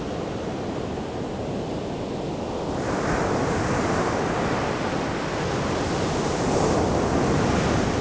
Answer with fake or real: real